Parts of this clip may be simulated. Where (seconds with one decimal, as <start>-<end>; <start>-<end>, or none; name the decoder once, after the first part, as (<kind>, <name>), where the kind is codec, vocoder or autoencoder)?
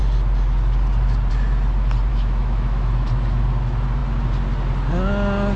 2.1-3.1 (autoencoder, DAC-VAE)